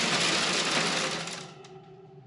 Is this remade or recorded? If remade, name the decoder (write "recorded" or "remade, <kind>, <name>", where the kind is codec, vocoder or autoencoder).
recorded